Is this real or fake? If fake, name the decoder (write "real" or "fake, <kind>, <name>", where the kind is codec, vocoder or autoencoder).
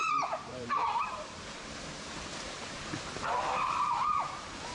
fake, vocoder, BigVGAN v2